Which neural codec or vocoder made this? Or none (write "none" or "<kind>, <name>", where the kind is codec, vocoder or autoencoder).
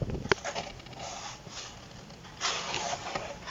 none